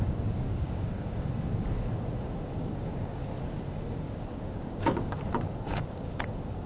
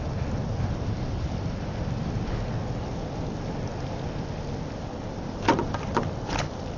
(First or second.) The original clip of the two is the second